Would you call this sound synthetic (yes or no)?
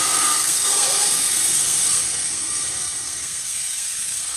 yes